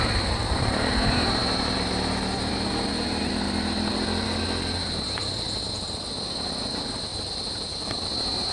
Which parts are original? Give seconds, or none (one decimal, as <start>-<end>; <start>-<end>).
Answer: 0.0-7.1; 8.1-8.5